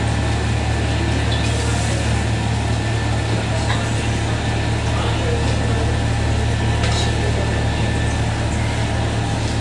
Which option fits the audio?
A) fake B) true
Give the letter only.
B